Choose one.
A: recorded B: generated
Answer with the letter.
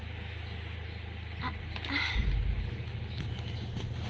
A